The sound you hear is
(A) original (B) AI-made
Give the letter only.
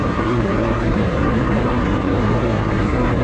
B